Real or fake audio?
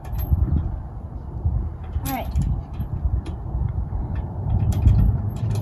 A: fake